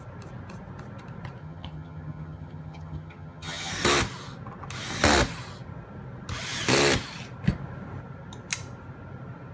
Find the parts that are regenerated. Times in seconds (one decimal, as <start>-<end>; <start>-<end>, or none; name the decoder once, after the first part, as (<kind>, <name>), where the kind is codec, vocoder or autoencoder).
1.4-3.7 (vocoder, HiFi-GAN)